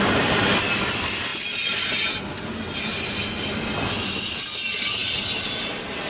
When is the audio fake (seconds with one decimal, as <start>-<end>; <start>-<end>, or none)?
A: none